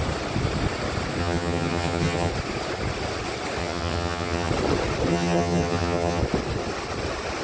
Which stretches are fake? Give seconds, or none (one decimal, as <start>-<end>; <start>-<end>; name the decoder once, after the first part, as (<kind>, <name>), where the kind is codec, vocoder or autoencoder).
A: 1.2-2.3 (vocoder, HiFi-GAN); 3.6-4.5; 5.1-6.2